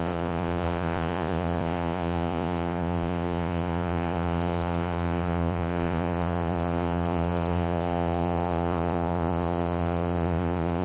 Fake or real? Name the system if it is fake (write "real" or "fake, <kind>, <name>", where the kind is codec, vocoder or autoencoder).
fake, vocoder, Vocos